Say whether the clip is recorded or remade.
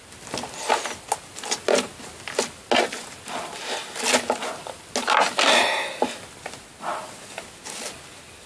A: recorded